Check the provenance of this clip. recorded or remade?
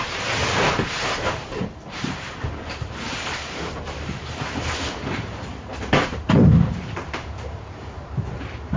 remade